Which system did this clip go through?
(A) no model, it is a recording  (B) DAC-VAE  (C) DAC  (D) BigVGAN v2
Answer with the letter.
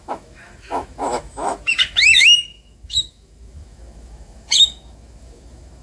B